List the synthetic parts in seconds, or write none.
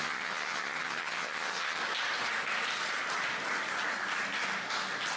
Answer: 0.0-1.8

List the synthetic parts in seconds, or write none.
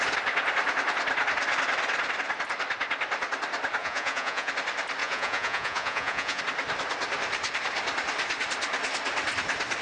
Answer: 3.8-4.5; 5.0-6.4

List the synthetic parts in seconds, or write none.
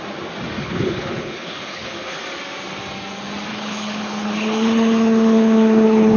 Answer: 0.6-2.2; 3.5-6.2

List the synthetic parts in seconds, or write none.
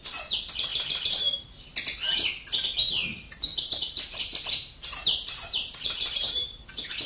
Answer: 0.7-1.4; 3.5-6.6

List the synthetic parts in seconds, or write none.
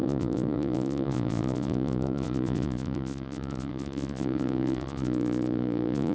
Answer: 0.0-6.1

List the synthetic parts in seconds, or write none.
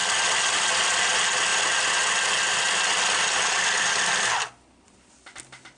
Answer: none